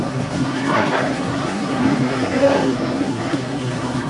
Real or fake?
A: fake